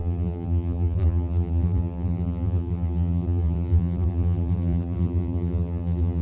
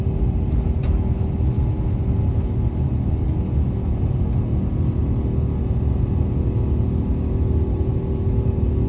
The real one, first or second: second